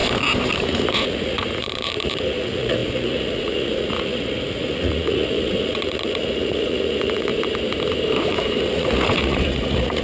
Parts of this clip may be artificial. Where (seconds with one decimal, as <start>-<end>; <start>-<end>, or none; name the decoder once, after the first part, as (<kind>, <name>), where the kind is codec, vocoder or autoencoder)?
0.7-7.3 (vocoder, Vocos); 8.6-10.0